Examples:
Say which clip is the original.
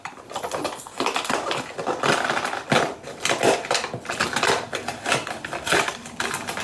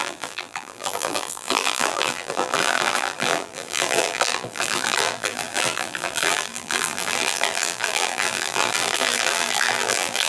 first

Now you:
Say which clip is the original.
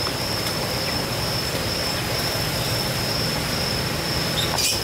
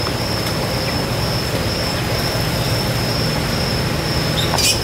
second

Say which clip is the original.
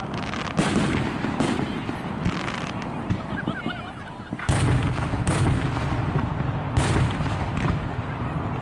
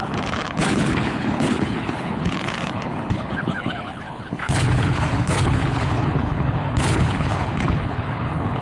first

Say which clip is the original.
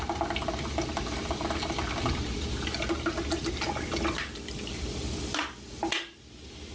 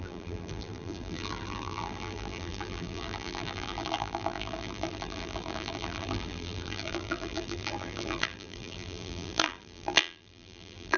first